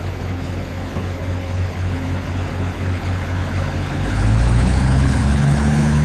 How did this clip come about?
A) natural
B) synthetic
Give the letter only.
B